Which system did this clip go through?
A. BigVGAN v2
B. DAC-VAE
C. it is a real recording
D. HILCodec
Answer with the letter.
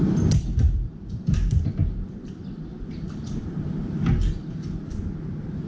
C